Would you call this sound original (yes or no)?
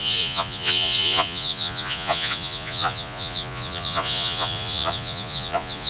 no